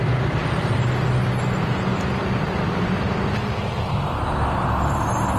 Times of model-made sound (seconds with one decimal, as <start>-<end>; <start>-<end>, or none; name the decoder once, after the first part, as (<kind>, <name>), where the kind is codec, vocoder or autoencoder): none